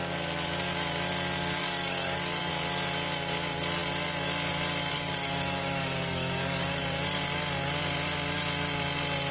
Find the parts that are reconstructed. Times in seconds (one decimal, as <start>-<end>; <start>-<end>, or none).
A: 1.6-2.5; 4.9-6.8